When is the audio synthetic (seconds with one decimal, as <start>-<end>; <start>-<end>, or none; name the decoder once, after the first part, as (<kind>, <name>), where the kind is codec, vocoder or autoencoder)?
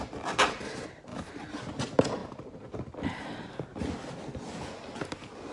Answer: none